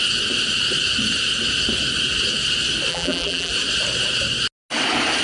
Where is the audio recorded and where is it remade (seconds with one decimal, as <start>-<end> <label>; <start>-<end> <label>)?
0.0-2.9 recorded; 2.9-3.5 remade; 3.5-5.2 recorded